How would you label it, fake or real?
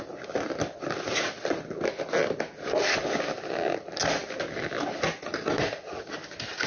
real